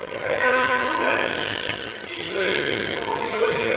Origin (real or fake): fake